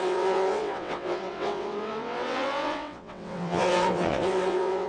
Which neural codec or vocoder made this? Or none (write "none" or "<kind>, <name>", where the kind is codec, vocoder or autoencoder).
vocoder, WaveNeXt